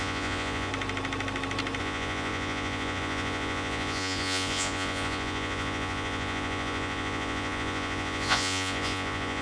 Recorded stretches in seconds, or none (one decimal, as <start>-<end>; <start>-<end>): 0.7-1.8

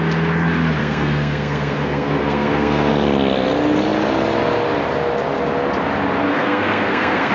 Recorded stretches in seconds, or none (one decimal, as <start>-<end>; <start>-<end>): 0.0-0.8; 2.9-6.3